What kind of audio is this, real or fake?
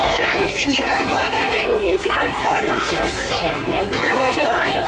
fake